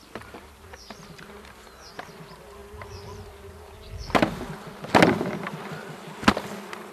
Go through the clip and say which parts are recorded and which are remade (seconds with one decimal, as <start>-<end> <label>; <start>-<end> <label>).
0.0-6.9 recorded